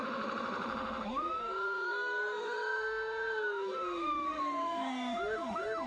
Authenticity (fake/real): fake